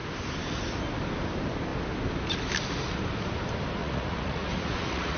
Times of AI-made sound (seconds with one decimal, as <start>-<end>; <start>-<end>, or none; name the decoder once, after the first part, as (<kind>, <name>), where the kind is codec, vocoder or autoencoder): 3.8-5.2 (vocoder, Vocos)